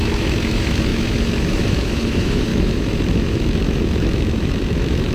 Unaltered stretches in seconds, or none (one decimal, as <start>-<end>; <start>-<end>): none